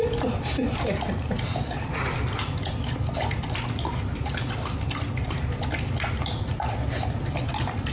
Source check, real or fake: real